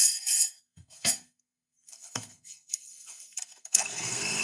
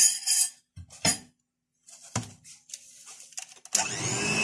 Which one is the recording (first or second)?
second